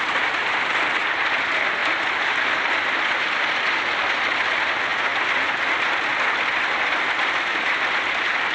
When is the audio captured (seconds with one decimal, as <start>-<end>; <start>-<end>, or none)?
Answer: 0.0-1.8; 3.7-8.5